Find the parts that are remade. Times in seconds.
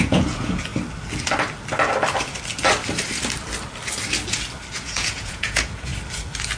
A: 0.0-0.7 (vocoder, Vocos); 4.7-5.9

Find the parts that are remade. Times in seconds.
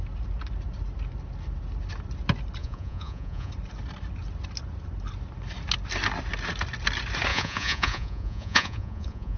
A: 2.6-3.5 (vocoder, Vocos); 7.3-9.4